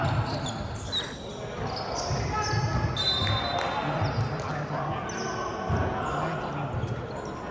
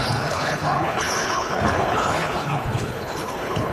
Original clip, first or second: first